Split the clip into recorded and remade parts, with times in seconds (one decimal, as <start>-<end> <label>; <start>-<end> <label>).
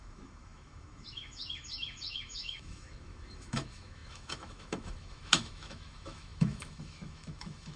0.0-7.8 remade